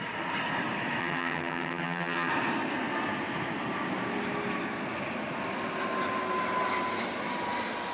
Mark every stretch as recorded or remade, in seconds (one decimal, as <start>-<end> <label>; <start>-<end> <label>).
0.0-1.0 recorded; 1.0-2.3 remade; 2.3-7.9 recorded